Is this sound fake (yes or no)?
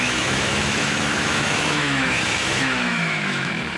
yes